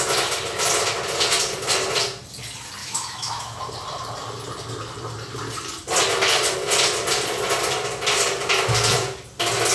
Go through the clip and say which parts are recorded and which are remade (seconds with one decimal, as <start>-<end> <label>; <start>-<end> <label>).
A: 0.0-2.8 recorded; 2.8-3.6 remade; 3.6-9.7 recorded